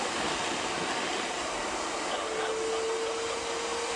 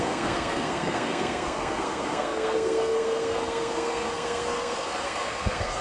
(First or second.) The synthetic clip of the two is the second